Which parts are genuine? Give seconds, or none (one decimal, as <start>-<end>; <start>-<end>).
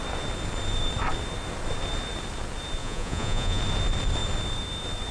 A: 0.0-2.8; 3.6-5.1